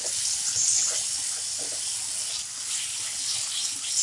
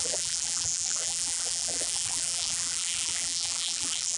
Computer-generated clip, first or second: second